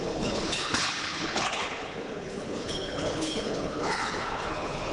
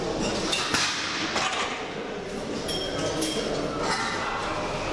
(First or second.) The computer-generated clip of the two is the first